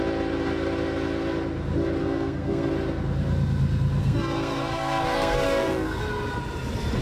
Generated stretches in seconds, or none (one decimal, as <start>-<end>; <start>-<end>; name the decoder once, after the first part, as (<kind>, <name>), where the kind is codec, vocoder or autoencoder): 2.0-2.7 (codec, SNAC); 4.0-6.0